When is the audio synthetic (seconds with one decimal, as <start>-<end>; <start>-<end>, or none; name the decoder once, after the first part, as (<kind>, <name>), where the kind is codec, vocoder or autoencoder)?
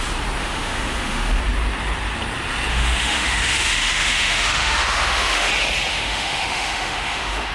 0.4-1.4 (autoencoder, DAC-VAE); 2.7-5.5; 5.9-7.5